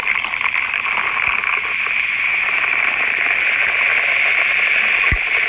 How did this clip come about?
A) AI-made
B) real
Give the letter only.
B